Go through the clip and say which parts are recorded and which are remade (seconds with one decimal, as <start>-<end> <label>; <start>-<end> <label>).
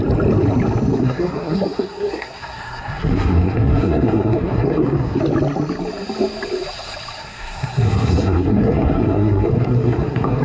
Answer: 0.0-1.0 recorded; 1.0-5.2 remade; 5.2-7.2 recorded; 7.2-10.4 remade